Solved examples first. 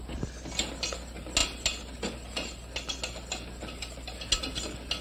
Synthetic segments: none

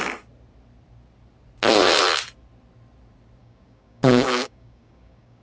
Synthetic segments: 3.4-5.4 (codec, DAC)

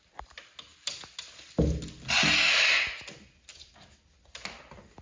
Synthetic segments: none

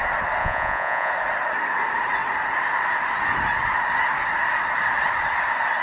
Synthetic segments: 0.4-1.1 (vocoder, Vocos)

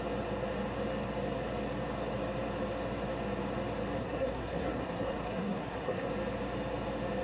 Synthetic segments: 4.0-6.1 (codec, SNAC)